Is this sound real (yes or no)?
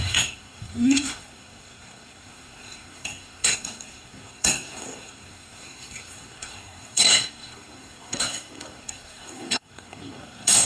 no